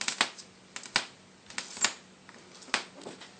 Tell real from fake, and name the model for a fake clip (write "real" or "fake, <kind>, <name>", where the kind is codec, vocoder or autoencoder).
real